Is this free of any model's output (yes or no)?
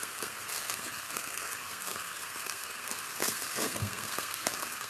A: no